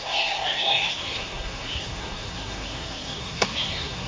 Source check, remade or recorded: remade